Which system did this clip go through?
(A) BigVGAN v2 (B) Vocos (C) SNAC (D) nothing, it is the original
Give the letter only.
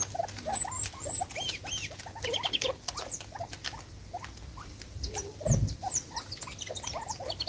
D